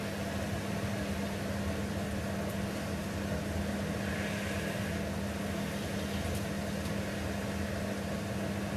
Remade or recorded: recorded